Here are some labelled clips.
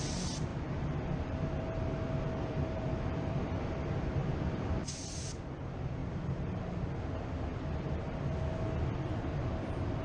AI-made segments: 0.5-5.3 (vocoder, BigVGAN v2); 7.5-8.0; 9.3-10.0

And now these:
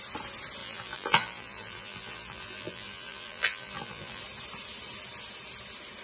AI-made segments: 0.6-4.2 (vocoder, BigVGAN v2)

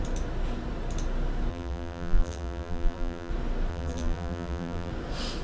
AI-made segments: 1.5-3.3 (vocoder, BigVGAN v2); 3.7-4.9

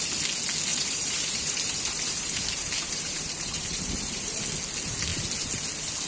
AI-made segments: 0.7-4.4 (vocoder, BigVGAN v2)

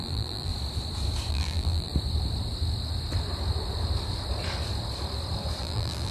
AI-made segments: 0.0-0.5 (vocoder, BigVGAN v2); 1.3-1.9; 5.6-6.1

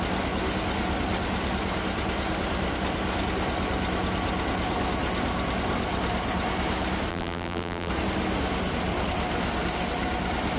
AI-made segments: 7.1-7.9 (vocoder, BigVGAN v2)